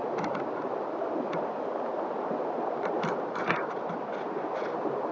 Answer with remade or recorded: recorded